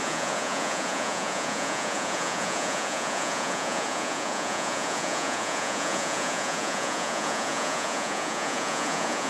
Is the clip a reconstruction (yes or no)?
yes